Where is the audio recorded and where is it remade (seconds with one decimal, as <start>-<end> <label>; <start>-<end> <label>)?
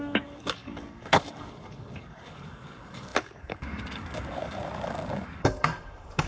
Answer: 0.0-6.3 remade